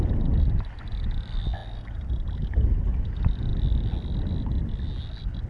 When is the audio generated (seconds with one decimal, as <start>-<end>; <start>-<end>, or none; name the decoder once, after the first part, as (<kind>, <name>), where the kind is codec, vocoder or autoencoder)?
none